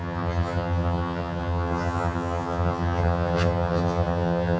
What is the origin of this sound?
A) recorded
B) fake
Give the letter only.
B